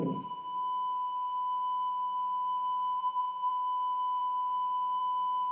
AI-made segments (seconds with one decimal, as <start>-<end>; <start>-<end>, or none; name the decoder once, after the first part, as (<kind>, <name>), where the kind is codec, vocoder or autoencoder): 3.0-3.5 (vocoder, Vocos)